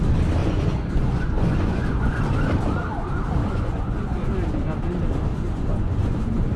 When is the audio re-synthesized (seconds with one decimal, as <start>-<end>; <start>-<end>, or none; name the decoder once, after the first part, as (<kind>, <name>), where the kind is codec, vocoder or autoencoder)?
0.4-2.2 (vocoder, Vocos); 3.4-4.3; 5.3-6.6